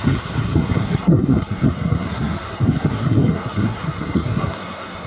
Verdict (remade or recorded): remade